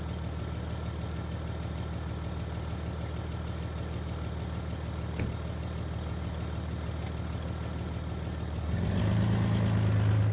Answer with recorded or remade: recorded